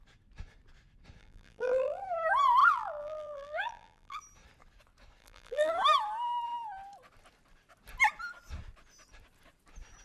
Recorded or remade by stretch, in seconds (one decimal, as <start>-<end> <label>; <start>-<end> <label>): 0.0-1.2 recorded; 1.2-2.0 remade; 2.0-2.6 recorded; 2.6-4.2 remade; 4.2-5.2 recorded; 5.2-5.7 remade; 5.7-10.0 recorded